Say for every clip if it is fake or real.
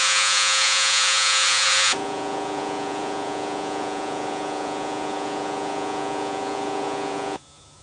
fake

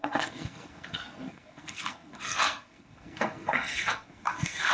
fake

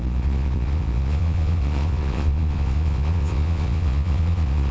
fake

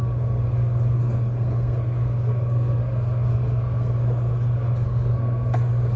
fake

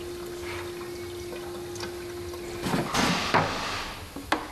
real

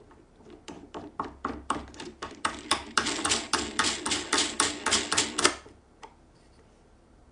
fake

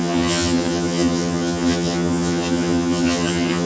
fake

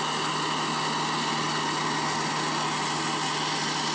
real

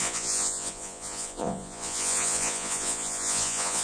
fake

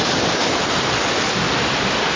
real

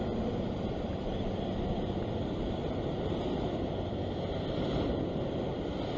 real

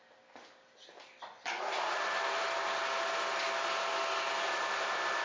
real